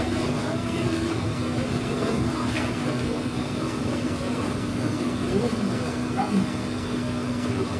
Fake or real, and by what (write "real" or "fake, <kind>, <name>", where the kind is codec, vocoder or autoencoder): fake, codec, SNAC